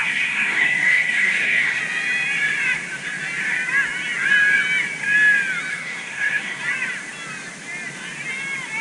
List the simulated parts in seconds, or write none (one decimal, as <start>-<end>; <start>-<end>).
0.0-1.8; 5.7-6.6